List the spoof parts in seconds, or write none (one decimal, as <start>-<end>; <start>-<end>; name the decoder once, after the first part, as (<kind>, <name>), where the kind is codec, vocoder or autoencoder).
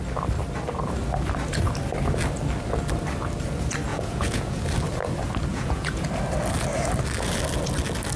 3.9-4.6 (vocoder, Vocos); 5.5-6.1